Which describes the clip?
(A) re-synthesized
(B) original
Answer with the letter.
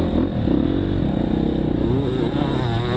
B